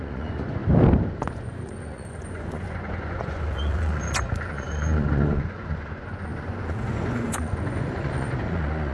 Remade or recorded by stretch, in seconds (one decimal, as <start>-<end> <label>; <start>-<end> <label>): 0.0-0.6 remade; 0.6-1.1 recorded; 1.1-8.9 remade